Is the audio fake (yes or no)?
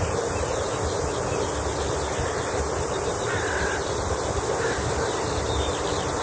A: no